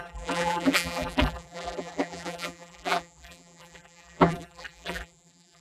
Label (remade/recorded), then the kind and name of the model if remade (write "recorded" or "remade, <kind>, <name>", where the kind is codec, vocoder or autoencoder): remade, vocoder, BigVGAN v2